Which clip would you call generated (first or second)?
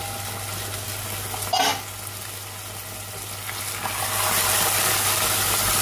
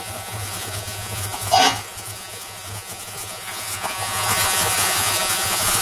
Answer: second